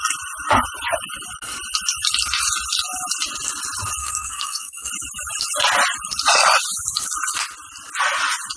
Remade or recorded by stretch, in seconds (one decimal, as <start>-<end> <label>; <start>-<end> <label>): 0.0-4.0 recorded; 4.0-4.9 remade; 4.9-8.6 recorded